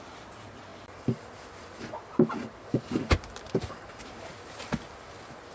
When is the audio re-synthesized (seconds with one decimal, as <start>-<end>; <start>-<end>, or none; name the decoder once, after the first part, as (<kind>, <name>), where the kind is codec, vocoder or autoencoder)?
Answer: none